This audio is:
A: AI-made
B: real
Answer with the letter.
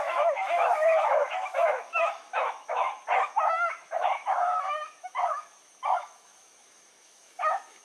A